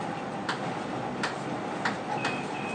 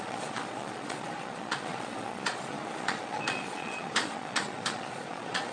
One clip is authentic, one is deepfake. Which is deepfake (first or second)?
second